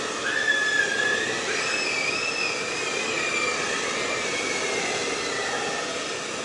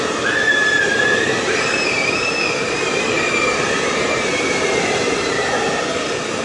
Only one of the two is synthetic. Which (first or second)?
second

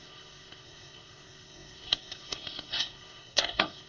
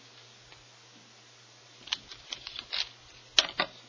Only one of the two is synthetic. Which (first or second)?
first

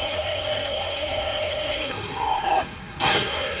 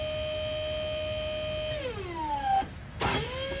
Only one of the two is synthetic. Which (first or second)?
first